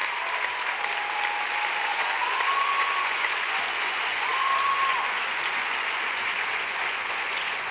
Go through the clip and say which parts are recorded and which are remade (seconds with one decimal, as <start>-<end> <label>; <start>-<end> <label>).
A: 0.0-1.8 recorded; 1.8-7.7 remade